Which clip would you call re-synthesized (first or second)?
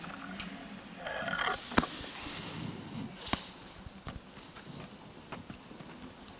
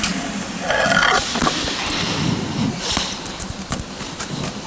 second